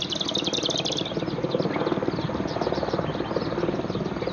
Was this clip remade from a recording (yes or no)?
no